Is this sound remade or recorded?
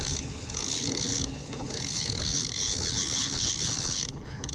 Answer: remade